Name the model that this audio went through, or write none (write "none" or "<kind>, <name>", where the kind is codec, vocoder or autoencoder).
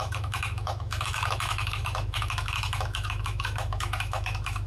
autoencoder, DAC-VAE